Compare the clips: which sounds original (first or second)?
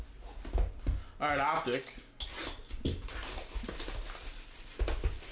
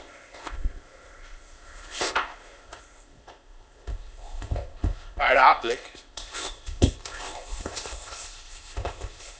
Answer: first